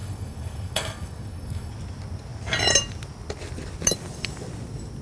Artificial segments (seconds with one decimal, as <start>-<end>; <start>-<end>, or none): 0.0-1.7